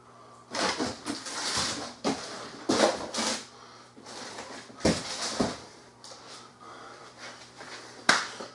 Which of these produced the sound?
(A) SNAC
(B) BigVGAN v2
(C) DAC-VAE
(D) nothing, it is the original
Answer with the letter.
B